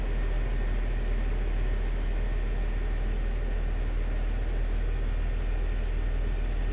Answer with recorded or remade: recorded